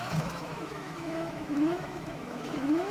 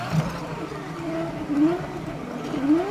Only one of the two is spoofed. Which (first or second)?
first